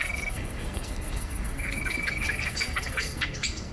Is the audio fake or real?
fake